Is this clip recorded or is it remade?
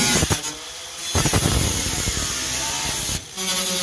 recorded